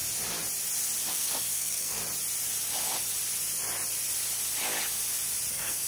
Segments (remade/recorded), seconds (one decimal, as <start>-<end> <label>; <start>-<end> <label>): 0.0-1.1 recorded; 1.1-2.0 remade; 2.0-5.5 recorded; 5.5-5.9 remade